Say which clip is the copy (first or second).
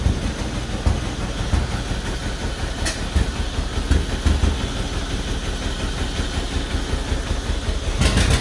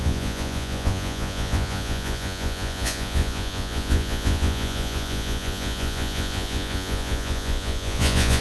second